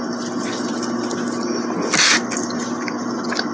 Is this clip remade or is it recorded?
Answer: recorded